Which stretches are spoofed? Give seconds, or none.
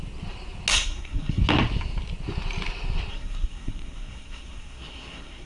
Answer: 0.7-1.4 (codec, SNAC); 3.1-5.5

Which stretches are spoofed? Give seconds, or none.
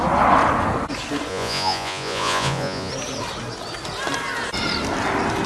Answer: 1.3-2.9 (vocoder, Vocos)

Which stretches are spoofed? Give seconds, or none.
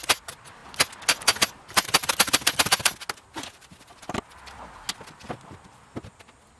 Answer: none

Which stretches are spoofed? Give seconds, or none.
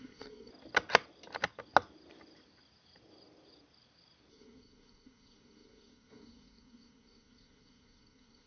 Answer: 0.0-0.5 (codec, SNAC); 4.3-8.5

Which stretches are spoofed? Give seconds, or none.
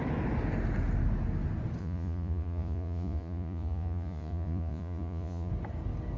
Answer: 1.8-5.5 (vocoder, Vocos)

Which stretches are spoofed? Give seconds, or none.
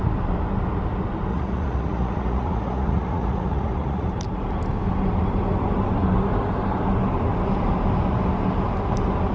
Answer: 1.3-4.1 (vocoder, Vocos)